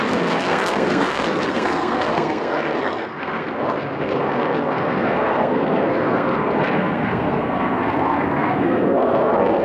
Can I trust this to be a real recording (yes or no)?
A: no